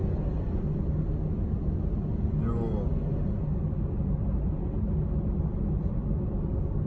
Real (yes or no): yes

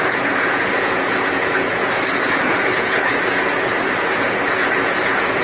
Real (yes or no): no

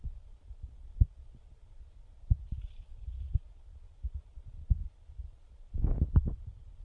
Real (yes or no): yes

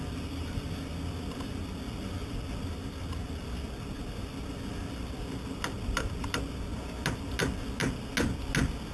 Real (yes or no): yes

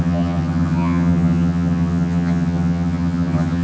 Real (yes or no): no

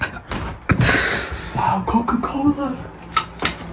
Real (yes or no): yes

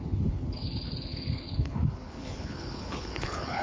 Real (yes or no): no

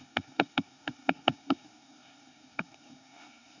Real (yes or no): no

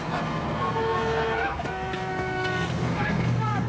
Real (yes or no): no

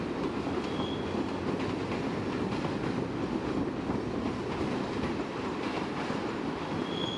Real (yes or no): yes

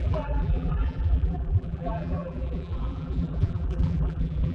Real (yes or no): no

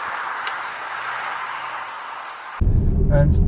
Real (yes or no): yes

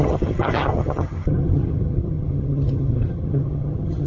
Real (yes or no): no